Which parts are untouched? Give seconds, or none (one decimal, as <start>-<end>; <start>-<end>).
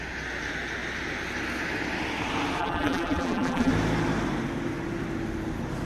0.0-2.6; 3.7-5.9